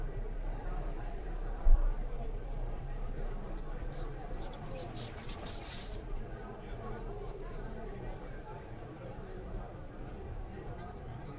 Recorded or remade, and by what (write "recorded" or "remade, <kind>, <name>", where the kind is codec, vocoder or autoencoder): remade, vocoder, BigVGAN v2